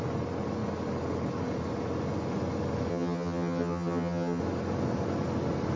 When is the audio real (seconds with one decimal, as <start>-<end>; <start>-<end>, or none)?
0.0-2.9; 4.4-5.8